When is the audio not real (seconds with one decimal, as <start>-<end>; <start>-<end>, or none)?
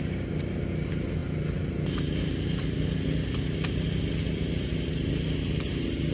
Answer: none